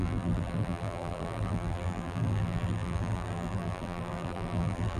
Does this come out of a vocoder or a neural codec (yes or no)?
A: yes